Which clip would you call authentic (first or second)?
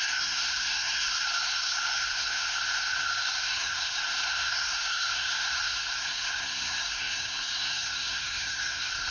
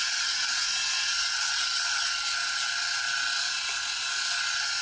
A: second